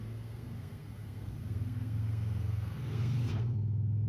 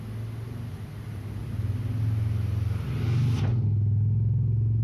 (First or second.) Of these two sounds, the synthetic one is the first